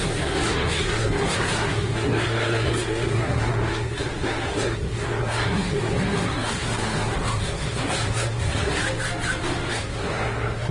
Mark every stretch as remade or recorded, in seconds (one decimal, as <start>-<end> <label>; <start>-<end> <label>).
0.0-8.8 remade; 8.8-9.7 recorded; 9.7-10.7 remade